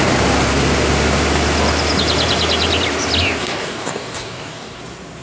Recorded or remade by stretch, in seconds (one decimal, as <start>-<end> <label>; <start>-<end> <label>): 0.0-3.4 recorded; 3.4-4.8 remade; 4.8-5.2 recorded